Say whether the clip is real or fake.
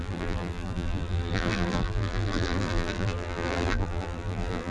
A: fake